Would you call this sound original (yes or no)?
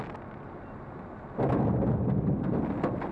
yes